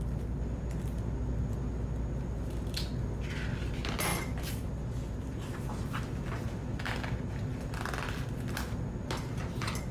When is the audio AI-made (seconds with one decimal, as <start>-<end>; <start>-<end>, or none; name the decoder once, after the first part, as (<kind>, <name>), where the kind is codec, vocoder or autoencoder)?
4.1-5.7 (vocoder, BigVGAN v2)

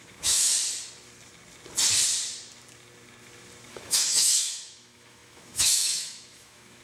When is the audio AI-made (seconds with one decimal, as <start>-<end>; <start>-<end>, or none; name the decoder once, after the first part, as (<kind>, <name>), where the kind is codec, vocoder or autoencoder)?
0.0-0.5 (autoencoder, DAC-VAE); 3.7-6.8

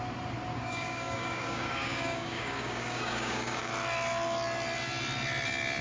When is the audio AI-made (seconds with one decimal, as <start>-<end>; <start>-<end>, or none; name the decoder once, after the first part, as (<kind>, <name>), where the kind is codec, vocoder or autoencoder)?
0.5-3.7 (codec, DAC)

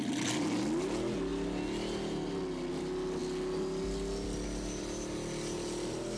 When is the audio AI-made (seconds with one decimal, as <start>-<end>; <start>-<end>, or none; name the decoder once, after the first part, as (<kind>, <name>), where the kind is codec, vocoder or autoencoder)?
none

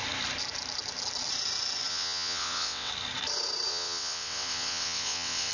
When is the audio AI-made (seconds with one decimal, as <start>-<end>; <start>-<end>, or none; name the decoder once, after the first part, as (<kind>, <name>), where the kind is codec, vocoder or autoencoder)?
1.9-2.9 (vocoder, WaveNeXt); 3.7-5.5